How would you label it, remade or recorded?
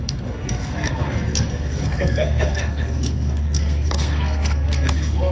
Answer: remade